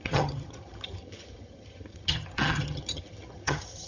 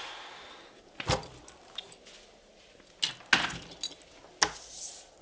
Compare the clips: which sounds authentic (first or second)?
second